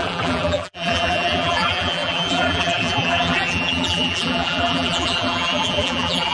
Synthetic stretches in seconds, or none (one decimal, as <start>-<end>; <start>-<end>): 0.0-6.3